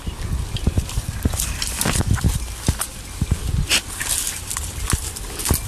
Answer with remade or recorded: recorded